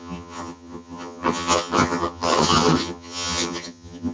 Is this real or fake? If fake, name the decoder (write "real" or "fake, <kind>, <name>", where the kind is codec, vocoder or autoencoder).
fake, vocoder, HiFi-GAN